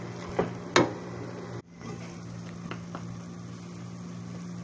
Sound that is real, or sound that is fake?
real